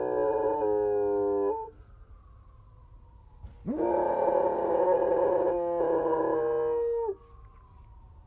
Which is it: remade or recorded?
recorded